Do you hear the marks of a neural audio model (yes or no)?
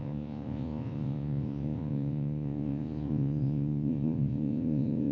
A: yes